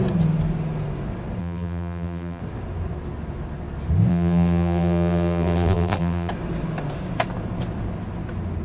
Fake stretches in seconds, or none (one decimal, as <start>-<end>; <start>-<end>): 1.4-2.4; 4.1-6.3